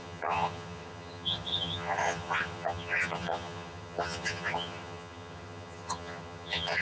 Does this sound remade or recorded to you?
remade